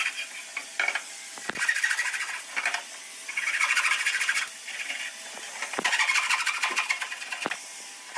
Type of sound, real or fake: real